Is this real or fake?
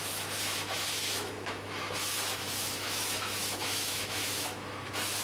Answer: fake